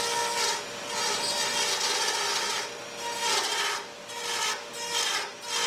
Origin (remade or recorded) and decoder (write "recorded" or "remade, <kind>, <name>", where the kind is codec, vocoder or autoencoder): recorded